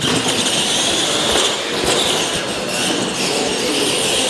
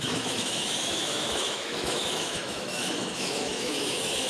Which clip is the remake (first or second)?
second